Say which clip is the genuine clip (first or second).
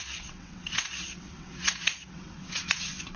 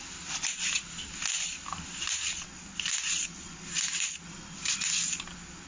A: second